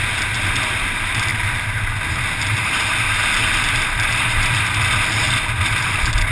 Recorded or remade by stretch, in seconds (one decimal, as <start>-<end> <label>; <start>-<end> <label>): 0.0-6.3 recorded